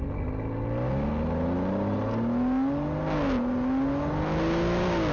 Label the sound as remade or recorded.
recorded